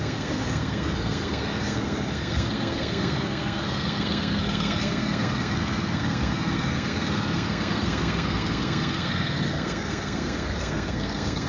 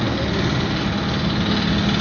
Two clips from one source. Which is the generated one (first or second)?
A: first